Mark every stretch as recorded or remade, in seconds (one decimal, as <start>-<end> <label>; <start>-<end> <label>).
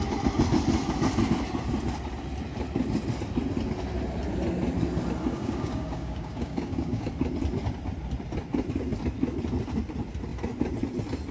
0.0-5.3 recorded; 5.3-7.1 remade; 7.1-11.3 recorded